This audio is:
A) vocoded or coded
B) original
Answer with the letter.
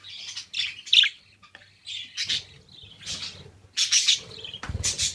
B